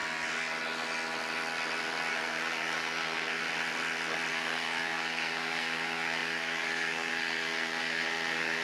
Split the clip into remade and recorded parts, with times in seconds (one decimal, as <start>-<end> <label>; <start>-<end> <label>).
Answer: 0.0-2.1 recorded; 2.1-3.4 remade; 3.4-4.3 recorded; 4.3-8.6 remade